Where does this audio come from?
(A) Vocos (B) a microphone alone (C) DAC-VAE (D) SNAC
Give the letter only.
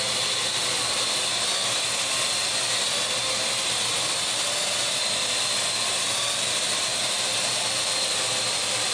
B